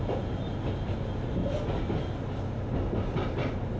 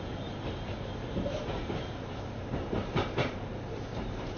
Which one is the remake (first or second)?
second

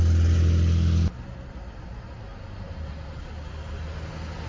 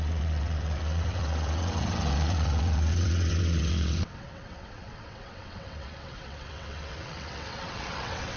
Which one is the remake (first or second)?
second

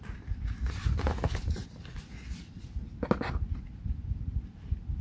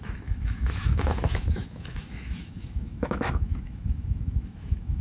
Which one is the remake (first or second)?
second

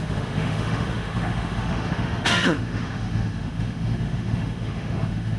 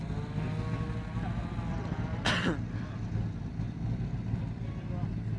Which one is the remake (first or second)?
first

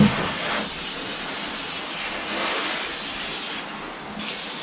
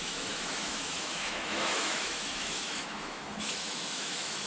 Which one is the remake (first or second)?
second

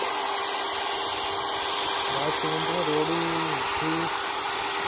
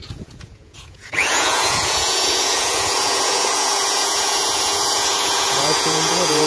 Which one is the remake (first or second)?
second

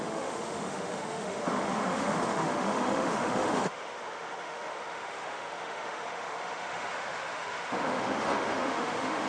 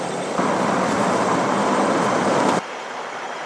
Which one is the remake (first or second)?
first